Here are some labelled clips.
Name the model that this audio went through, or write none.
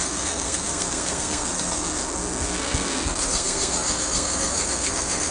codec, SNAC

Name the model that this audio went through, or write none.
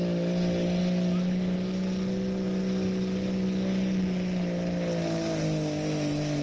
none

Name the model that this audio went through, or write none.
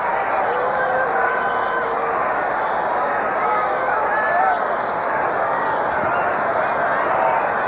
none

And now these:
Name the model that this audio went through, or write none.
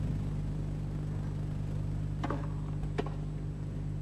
none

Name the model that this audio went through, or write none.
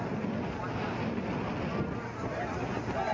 none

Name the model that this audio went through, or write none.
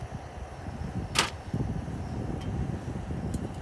none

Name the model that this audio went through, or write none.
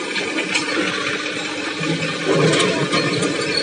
none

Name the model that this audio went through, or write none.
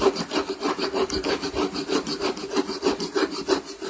none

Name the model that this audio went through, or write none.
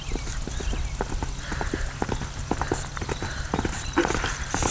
none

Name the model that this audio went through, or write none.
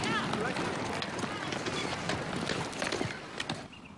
none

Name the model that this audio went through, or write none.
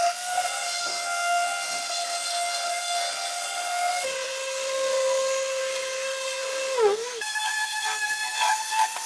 codec, SNAC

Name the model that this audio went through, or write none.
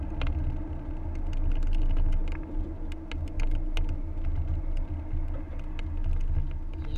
none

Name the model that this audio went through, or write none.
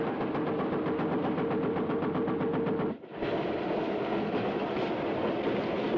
none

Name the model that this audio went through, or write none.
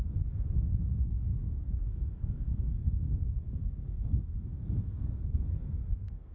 codec, SNAC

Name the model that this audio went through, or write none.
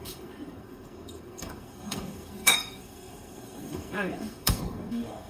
codec, SNAC